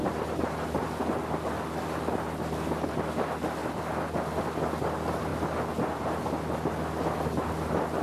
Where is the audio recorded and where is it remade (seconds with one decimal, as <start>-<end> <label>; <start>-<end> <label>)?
0.0-8.0 recorded